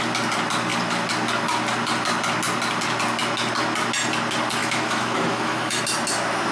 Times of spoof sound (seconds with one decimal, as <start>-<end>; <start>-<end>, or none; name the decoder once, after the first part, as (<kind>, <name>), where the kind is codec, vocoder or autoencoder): 4.6-5.8 (autoencoder, DAC-VAE)